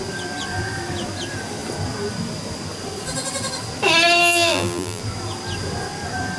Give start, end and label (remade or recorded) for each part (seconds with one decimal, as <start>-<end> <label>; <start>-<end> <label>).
0.0-4.2 recorded; 4.2-5.0 remade; 5.0-6.4 recorded